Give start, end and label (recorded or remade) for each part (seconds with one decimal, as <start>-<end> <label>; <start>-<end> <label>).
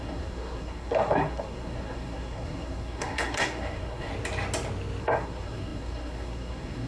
0.0-4.1 remade; 4.1-5.0 recorded; 5.0-6.9 remade